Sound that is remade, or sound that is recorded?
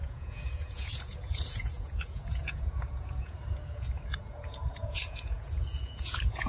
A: remade